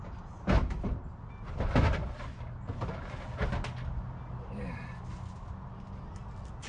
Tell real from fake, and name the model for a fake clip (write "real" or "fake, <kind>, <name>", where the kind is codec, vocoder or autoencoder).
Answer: real